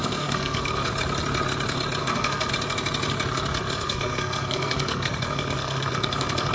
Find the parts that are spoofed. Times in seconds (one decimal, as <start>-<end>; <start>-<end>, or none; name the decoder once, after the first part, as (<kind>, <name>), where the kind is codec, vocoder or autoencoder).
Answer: 0.0-0.9 (codec, SNAC); 2.0-2.5; 3.6-6.5